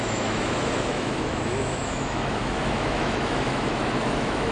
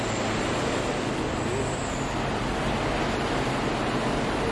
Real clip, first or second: second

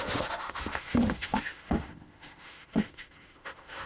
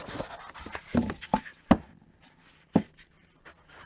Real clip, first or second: second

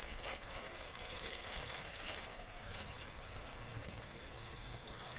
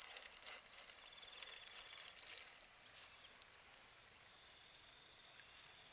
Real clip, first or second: second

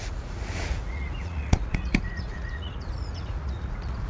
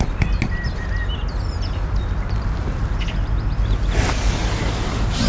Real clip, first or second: second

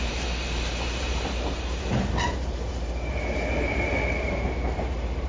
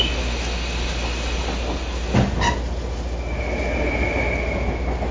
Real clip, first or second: second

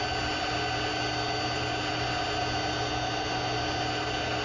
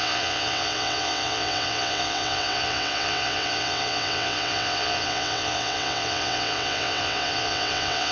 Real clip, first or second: first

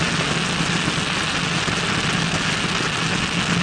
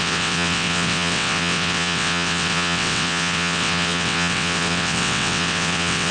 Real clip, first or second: first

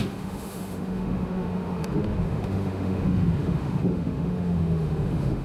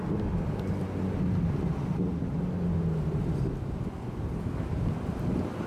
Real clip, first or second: second